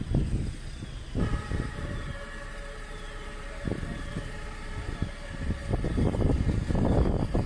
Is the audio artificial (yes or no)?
no